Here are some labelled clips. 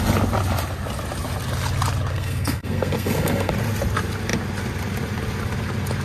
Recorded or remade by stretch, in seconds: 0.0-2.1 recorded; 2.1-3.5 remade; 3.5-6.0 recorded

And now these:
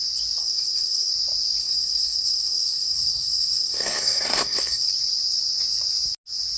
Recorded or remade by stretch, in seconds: 0.0-0.4 recorded; 0.4-1.1 remade; 1.1-1.6 recorded; 1.6-4.9 remade; 4.9-6.6 recorded

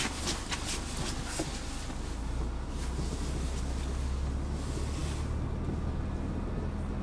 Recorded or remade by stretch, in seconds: 0.0-7.0 recorded

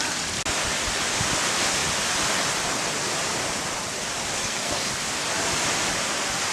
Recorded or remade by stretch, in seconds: 0.0-4.4 recorded; 4.4-4.9 remade; 4.9-6.5 recorded

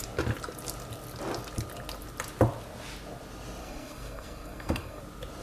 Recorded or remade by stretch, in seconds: 0.0-3.6 recorded; 3.6-5.0 remade; 5.0-5.4 recorded

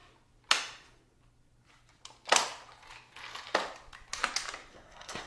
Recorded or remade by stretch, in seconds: 0.0-4.7 recorded; 4.7-5.3 remade

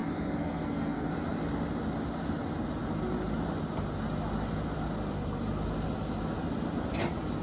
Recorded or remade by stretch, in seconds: 0.0-1.1 remade; 1.1-7.4 recorded